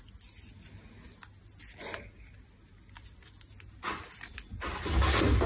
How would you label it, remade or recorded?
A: recorded